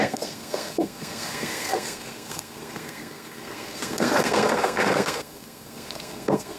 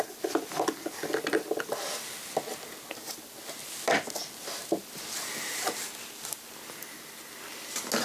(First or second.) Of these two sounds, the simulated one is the first